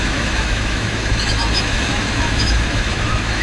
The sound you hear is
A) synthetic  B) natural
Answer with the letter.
A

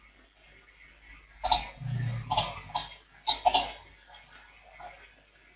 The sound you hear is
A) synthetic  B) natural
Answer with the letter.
B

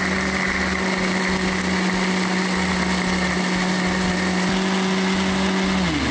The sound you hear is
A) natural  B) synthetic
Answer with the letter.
A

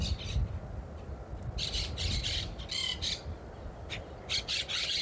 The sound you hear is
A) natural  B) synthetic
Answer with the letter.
A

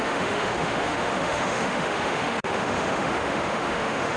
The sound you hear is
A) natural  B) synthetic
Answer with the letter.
B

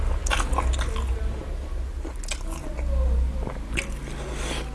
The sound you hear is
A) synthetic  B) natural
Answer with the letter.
B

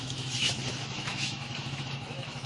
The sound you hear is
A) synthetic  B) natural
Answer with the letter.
A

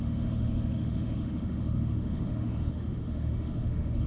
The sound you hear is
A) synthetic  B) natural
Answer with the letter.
A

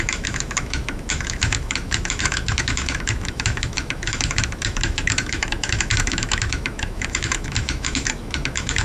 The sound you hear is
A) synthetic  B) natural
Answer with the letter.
A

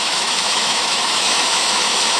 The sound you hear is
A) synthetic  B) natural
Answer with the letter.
A